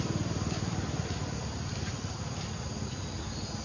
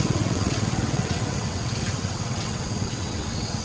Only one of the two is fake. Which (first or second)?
second